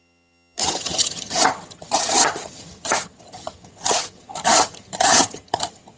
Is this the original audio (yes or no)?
no